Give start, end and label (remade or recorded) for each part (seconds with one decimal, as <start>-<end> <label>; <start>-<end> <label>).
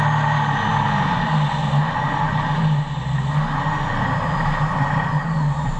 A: 0.0-5.8 recorded